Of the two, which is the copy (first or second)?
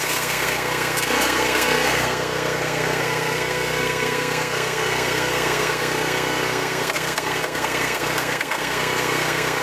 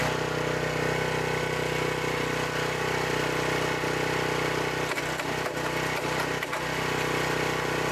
first